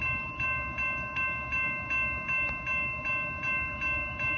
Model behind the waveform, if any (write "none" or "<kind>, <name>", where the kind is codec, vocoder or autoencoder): none